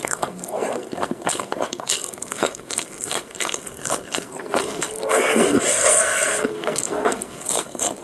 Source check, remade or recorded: remade